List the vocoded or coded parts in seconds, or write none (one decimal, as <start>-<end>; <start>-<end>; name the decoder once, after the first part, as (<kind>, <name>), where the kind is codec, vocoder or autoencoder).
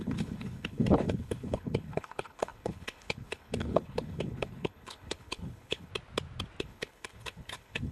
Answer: 0.0-5.9 (codec, HILCodec); 6.6-7.9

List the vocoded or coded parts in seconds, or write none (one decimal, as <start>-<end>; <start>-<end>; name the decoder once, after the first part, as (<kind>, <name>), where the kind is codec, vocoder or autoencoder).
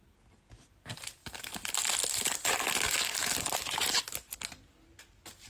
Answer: none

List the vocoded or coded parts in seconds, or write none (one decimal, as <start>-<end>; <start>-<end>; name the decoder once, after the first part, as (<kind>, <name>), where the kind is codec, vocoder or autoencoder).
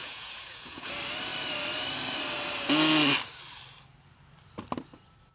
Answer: 0.0-0.9 (vocoder, Vocos)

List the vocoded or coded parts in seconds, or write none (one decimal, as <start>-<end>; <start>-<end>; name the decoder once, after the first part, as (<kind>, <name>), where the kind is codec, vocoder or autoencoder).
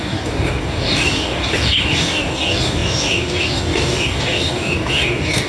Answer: 0.0-5.5 (codec, DAC)